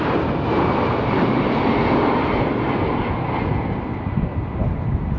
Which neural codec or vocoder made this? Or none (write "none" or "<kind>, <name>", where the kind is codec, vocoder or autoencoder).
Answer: none